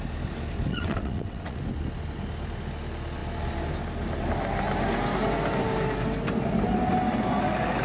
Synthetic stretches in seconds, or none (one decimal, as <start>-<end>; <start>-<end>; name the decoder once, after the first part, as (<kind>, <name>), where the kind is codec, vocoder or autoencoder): 0.7-1.6 (vocoder, WaveNeXt)